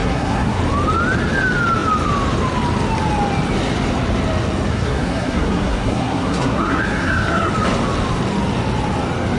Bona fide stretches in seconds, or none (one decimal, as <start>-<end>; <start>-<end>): 0.6-4.7; 7.5-9.4

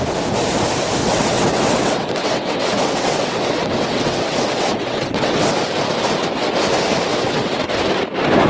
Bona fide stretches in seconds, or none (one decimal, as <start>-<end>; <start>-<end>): 0.0-1.0; 5.5-7.1; 7.7-8.5

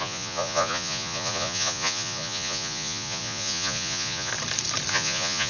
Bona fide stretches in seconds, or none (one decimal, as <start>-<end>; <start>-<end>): 4.3-4.9

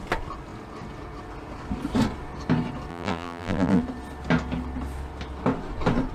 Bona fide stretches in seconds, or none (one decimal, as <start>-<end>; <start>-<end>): 0.0-2.9; 3.8-6.1

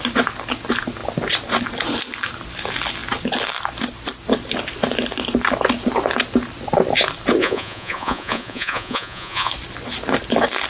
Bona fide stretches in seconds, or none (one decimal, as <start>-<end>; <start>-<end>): 0.0-7.4; 9.5-10.7

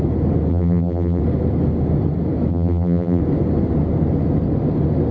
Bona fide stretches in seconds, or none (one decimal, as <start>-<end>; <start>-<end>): 0.0-0.5; 1.2-2.5; 3.2-5.1

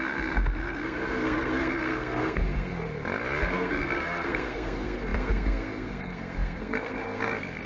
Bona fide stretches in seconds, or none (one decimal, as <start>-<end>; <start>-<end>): 2.7-3.4

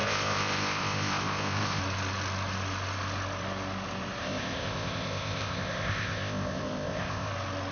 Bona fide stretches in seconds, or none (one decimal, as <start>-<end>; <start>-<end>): 1.8-4.2; 7.3-7.7